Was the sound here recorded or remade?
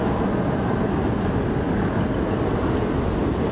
recorded